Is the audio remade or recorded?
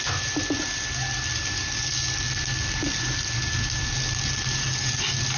recorded